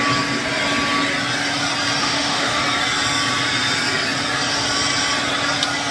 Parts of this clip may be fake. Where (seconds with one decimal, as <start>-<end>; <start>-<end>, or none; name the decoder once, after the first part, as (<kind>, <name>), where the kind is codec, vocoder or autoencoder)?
2.0-2.6 (autoencoder, DAC-VAE)